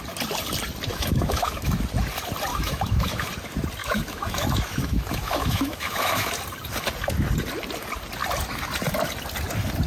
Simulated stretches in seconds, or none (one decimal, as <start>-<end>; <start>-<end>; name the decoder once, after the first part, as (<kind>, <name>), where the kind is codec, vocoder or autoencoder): 0.9-1.7 (autoencoder, DAC-VAE); 2.5-3.3; 3.8-6.3

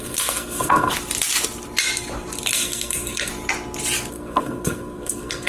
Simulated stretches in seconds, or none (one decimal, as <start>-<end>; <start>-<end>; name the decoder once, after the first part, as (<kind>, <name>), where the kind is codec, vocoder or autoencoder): 0.0-0.9 (codec, SNAC); 2.5-3.3; 4.1-5.5

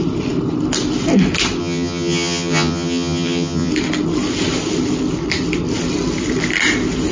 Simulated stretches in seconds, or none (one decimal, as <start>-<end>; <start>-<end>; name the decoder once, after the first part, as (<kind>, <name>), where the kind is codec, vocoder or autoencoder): 1.6-3.7 (vocoder, HiFi-GAN)

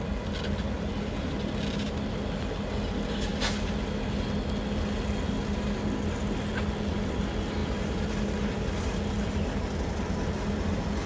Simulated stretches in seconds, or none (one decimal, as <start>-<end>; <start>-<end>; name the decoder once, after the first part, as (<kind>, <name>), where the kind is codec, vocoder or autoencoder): none